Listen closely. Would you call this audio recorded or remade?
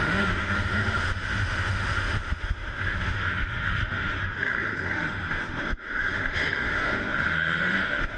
remade